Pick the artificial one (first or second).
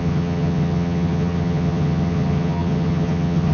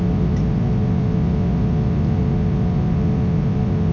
first